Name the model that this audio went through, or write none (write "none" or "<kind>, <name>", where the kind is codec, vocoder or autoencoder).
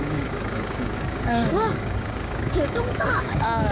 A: codec, DAC